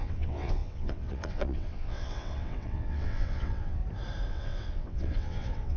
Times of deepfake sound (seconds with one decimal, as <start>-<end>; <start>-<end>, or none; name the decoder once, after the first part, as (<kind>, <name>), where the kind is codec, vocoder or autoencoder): 0.0-3.8 (vocoder, WaveNeXt); 4.3-5.8